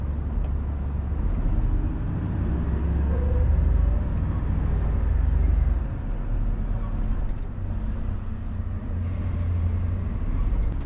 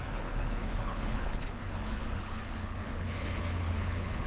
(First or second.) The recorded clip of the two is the first